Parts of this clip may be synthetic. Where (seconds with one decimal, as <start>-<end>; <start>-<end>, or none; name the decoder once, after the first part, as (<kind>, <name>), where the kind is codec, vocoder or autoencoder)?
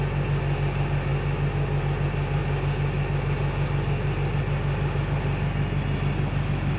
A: none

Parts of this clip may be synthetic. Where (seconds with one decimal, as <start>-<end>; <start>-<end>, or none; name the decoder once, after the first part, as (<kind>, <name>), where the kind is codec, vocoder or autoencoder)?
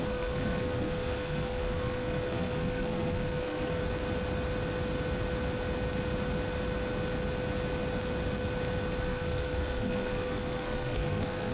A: 0.0-3.8 (codec, SNAC); 9.0-11.5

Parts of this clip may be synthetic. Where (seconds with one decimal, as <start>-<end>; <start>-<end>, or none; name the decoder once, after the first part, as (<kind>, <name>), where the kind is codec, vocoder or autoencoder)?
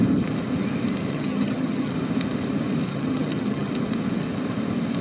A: 1.1-1.9 (vocoder, HiFi-GAN); 2.9-3.7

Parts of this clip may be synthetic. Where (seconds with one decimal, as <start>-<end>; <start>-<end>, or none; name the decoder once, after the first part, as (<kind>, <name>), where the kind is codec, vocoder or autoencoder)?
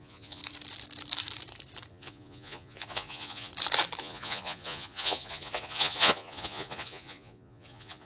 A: 0.0-0.4 (vocoder, Vocos); 1.9-3.5; 4.0-8.1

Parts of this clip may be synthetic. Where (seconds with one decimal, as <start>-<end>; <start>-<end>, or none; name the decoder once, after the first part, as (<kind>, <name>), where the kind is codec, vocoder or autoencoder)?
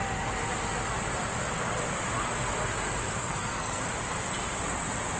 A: 3.2-3.8 (codec, SNAC)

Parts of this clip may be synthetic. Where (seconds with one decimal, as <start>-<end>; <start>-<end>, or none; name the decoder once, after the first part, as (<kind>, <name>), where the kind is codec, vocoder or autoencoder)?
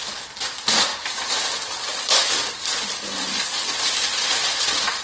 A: none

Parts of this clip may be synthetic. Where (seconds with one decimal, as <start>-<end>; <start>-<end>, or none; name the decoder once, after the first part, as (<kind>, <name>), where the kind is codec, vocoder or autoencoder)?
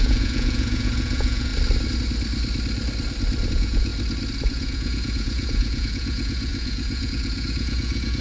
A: 0.0-1.5 (vocoder, Vocos); 3.5-3.9; 4.5-8.2